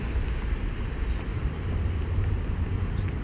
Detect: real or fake real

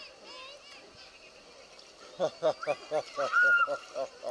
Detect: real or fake real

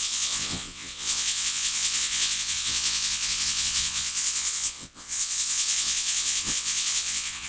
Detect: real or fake fake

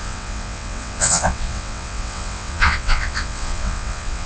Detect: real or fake fake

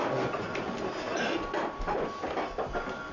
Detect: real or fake real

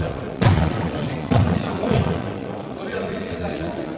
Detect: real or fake fake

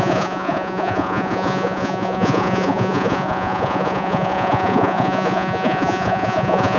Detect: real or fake fake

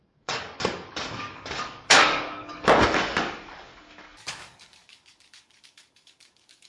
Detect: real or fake fake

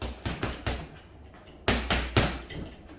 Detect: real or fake real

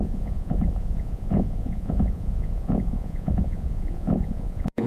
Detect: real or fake fake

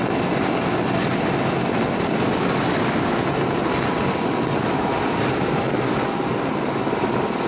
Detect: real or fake real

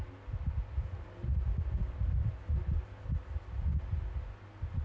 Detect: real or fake real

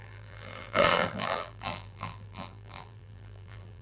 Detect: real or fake fake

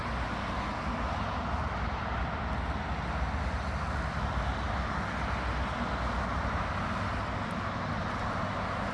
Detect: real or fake real